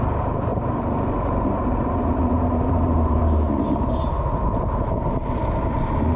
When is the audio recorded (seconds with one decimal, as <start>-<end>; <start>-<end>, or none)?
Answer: 3.2-6.2